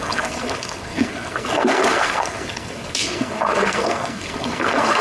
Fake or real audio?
fake